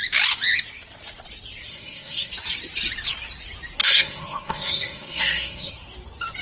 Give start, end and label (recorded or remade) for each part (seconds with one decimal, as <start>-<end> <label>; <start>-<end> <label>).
0.0-1.7 recorded; 1.7-2.3 remade; 2.3-3.8 recorded; 3.8-5.7 remade; 5.7-6.4 recorded